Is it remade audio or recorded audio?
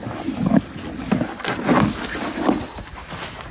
recorded